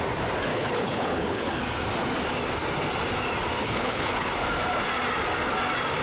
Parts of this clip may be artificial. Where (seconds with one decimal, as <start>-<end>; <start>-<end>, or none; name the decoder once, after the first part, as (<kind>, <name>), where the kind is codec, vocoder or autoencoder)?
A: 0.5-1.6 (codec, HILCodec); 3.6-4.3